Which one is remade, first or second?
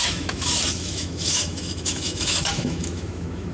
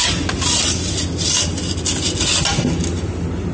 first